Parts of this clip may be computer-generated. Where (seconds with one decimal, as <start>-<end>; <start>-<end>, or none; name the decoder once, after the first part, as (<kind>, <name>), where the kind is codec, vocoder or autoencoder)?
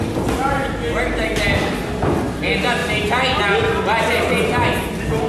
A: none